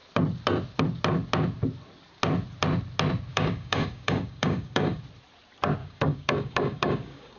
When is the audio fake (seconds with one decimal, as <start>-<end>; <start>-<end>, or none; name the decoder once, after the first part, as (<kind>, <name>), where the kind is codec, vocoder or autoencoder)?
3.3-5.0 (codec, DAC); 5.8-7.4